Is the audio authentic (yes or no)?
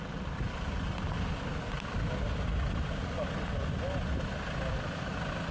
yes